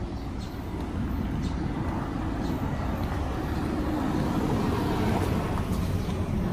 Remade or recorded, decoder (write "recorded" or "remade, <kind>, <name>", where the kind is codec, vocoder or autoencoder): recorded